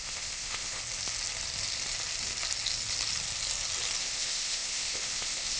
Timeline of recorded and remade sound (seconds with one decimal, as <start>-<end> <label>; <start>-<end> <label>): 0.0-0.8 remade; 0.8-4.0 recorded; 4.0-5.6 remade